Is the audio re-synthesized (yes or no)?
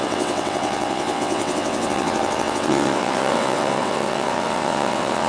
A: yes